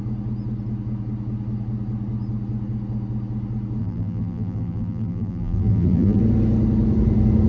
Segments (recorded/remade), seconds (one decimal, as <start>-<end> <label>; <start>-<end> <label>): 0.0-3.8 recorded; 3.8-6.2 remade; 6.2-7.5 recorded